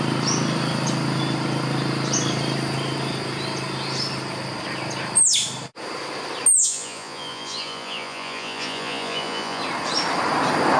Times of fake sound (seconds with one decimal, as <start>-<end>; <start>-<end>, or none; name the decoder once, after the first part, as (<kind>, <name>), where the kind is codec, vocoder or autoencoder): 6.6-9.6 (vocoder, Vocos)